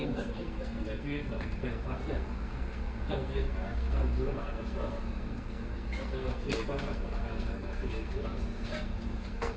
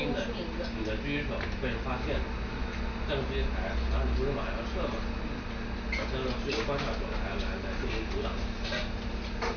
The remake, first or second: first